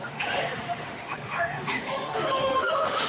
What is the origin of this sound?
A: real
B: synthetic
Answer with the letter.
B